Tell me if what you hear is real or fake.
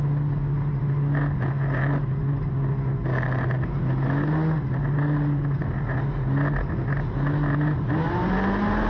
real